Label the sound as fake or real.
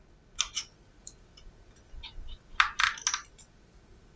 real